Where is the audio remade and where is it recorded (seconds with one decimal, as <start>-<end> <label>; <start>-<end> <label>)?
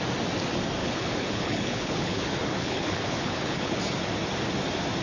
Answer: 0.0-0.8 recorded; 0.8-3.8 remade; 3.8-5.0 recorded